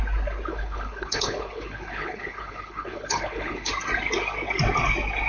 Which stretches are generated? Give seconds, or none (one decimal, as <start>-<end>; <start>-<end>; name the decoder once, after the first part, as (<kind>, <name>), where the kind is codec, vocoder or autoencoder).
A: 0.5-3.7 (codec, HILCodec)